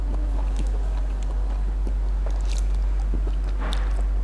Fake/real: real